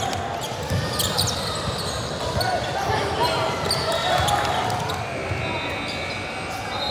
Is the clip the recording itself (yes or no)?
yes